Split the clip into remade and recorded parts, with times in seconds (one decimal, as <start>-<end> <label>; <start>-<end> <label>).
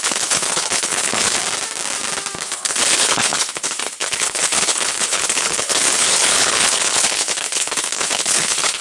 0.0-1.4 remade; 1.4-2.4 recorded; 2.4-8.8 remade